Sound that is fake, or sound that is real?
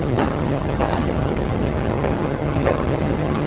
fake